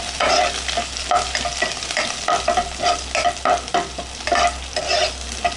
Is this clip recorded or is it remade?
recorded